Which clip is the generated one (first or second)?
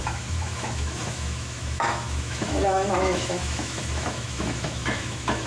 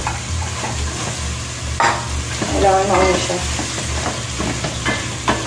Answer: first